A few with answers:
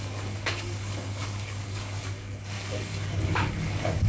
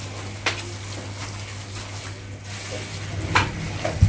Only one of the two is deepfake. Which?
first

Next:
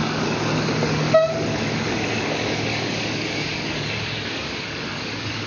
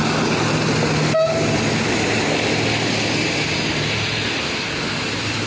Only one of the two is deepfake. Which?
first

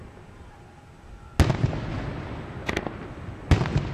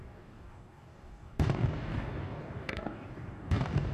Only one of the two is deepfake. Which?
second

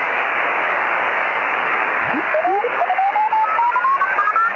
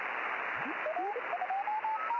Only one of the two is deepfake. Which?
first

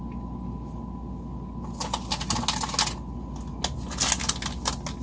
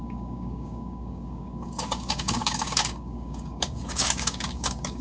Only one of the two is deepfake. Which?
second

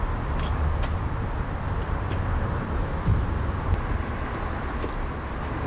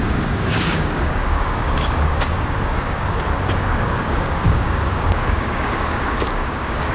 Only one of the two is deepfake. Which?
second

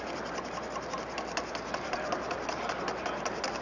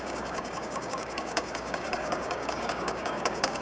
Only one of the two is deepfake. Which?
second